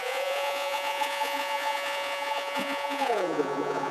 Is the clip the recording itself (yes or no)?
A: no